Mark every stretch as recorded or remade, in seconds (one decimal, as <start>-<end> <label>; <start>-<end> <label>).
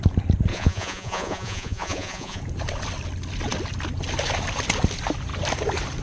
0.0-0.5 recorded; 0.5-2.4 remade; 2.4-6.0 recorded